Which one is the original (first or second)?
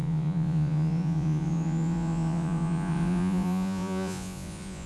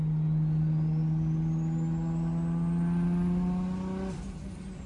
second